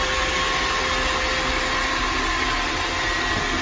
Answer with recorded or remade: recorded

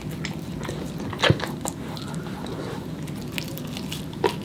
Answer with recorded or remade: recorded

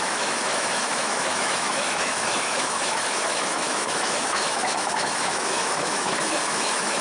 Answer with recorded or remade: remade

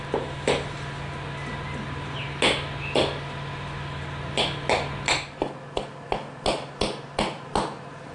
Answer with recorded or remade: recorded